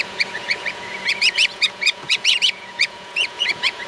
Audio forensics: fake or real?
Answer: fake